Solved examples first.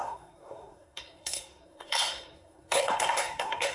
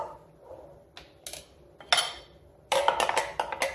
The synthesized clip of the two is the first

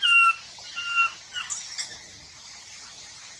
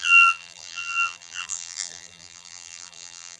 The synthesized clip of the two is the second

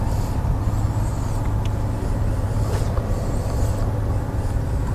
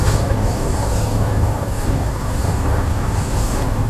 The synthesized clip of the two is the second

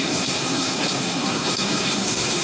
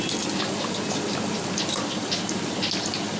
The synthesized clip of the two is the first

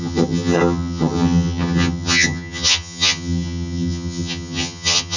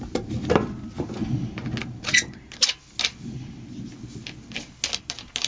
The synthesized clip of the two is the first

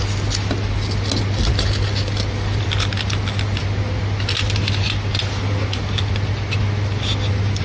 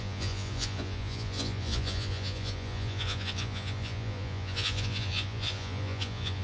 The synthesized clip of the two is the second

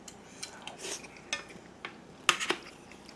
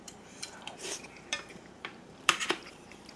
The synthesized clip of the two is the second